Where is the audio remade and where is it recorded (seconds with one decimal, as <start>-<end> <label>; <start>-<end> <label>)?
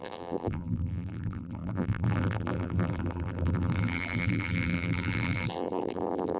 0.0-6.4 remade